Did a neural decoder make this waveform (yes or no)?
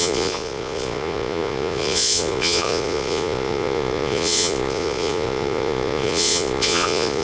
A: yes